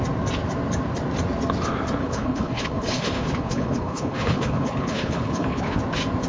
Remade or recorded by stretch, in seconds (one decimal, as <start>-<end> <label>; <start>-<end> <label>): 0.0-2.0 recorded; 2.0-5.8 remade; 5.8-6.3 recorded